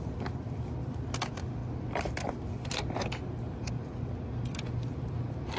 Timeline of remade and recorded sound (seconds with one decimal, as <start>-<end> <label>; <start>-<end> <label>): 0.0-5.6 recorded